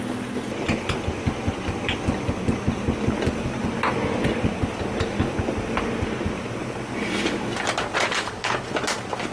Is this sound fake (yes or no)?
no